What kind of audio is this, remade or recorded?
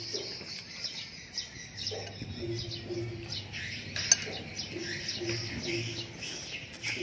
recorded